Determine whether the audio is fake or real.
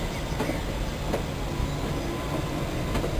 real